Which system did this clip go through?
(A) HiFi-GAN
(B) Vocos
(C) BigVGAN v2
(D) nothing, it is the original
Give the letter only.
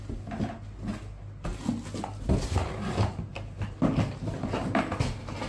D